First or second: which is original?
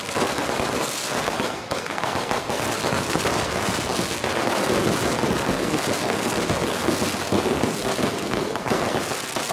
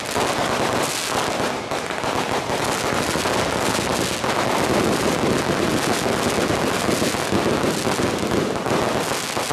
second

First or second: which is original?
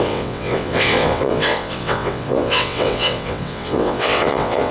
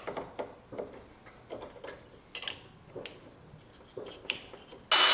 second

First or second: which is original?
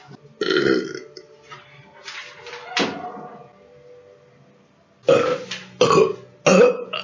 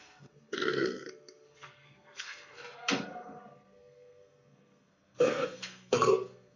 first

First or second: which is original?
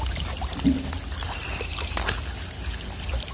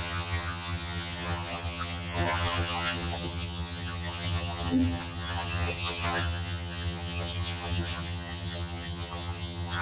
first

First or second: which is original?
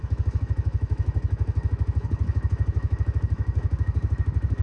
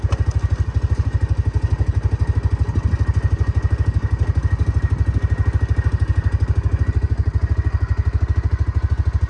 second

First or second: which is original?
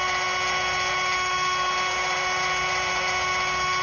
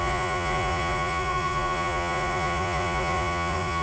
first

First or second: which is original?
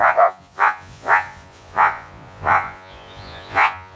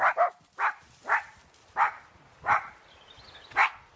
second